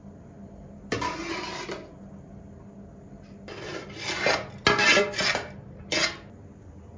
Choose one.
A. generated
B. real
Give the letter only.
B